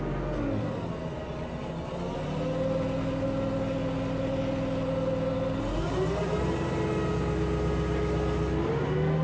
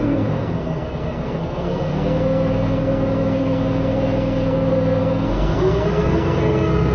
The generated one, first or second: second